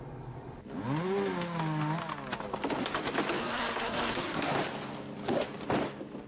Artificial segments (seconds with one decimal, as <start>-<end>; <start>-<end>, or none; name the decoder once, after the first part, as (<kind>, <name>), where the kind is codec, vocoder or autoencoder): 3.4-4.5 (codec, SNAC)